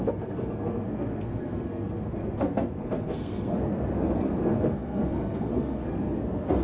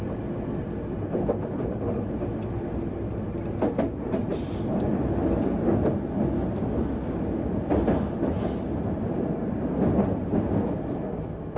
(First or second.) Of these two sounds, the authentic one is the second